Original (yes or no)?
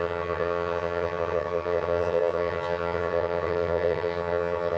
no